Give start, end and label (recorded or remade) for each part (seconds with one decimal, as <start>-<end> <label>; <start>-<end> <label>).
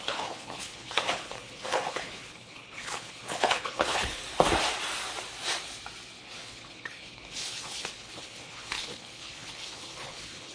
0.0-4.2 remade; 4.2-6.2 recorded; 6.2-10.5 remade